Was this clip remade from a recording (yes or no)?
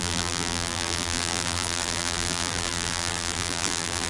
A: yes